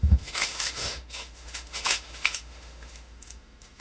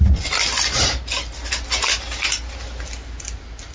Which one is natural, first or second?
second